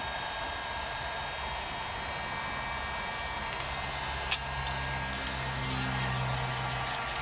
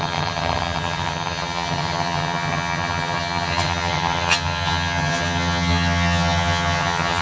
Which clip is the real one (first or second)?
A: first